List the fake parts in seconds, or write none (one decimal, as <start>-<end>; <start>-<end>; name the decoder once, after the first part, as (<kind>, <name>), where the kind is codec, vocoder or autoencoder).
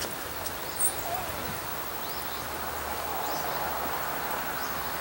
0.0-1.7 (vocoder, BigVGAN v2); 2.4-3.1